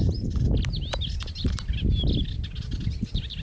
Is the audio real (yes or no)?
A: yes